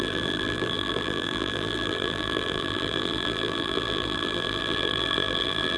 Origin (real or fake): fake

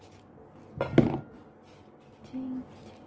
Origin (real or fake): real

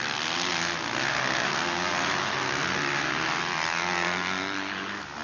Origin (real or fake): real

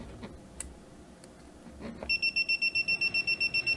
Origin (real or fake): real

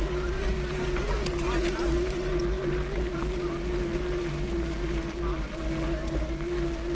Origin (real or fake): real